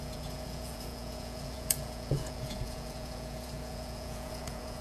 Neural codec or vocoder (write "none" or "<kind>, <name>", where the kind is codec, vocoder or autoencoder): vocoder, Vocos